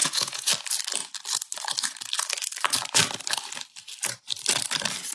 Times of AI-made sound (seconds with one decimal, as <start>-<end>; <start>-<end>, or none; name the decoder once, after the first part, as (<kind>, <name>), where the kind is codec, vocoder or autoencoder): 0.0-0.5 (vocoder, Vocos)